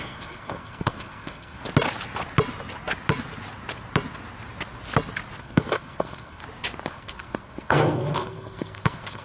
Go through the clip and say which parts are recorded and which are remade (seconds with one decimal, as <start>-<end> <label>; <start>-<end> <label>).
0.0-1.6 remade; 1.6-5.4 recorded; 5.4-6.4 remade; 6.4-6.9 recorded; 6.9-9.2 remade